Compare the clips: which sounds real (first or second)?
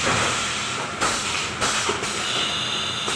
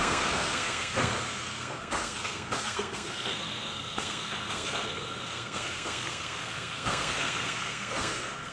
first